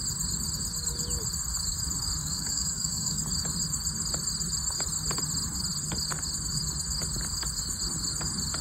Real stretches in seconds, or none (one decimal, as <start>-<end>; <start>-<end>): 0.0-2.2; 3.2-8.6